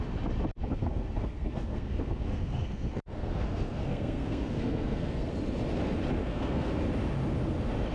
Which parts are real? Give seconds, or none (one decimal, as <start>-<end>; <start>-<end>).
0.0-0.6; 5.3-6.2; 6.7-7.9